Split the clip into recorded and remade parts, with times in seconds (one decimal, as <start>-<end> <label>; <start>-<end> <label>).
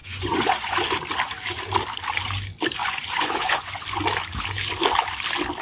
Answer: 0.0-0.9 remade; 0.9-2.8 recorded; 2.8-3.7 remade; 3.7-5.6 recorded